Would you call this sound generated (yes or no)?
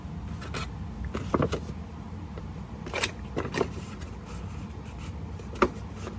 no